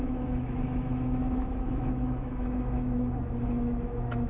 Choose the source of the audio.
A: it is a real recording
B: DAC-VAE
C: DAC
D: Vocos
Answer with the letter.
B